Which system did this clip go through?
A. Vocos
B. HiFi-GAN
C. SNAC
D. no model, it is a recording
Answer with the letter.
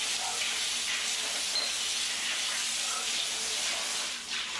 D